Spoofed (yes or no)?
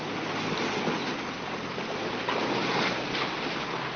no